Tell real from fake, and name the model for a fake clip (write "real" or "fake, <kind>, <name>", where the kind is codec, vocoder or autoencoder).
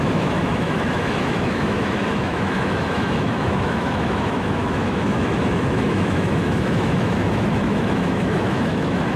fake, autoencoder, DAC-VAE